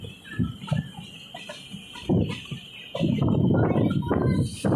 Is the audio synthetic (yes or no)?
no